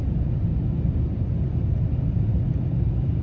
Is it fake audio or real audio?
real